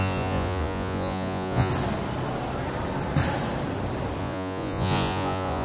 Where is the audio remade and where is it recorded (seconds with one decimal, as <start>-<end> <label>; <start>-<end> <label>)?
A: 0.0-1.7 remade; 1.7-4.2 recorded; 4.2-5.6 remade